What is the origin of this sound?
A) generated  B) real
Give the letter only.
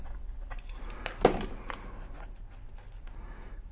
B